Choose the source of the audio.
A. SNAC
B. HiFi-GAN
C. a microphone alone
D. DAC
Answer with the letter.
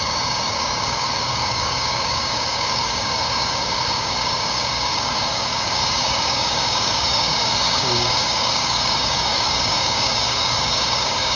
D